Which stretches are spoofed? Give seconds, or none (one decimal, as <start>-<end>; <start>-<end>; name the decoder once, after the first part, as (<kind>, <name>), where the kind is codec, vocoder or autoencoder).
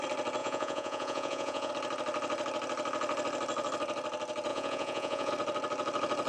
0.4-1.7 (vocoder, Vocos); 4.5-5.3